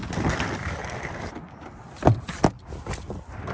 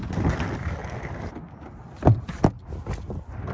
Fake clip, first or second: first